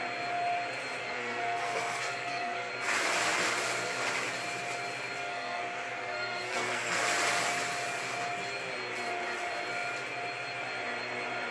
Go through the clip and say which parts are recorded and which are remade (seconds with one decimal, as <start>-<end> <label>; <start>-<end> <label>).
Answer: 0.0-1.0 recorded; 1.0-2.7 remade; 2.7-5.3 recorded; 5.3-7.0 remade; 7.0-11.5 recorded